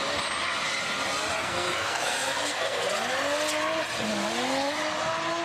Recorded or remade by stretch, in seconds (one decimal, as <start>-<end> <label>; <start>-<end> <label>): 0.0-1.4 recorded; 1.4-2.9 remade; 2.9-5.4 recorded